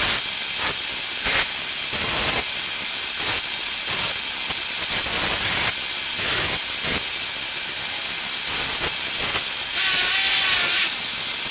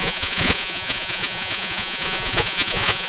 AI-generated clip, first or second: second